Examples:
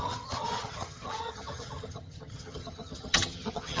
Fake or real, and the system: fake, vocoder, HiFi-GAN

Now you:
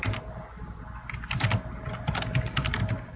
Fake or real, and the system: real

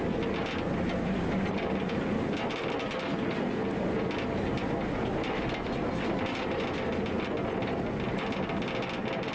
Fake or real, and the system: real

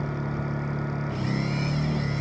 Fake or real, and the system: real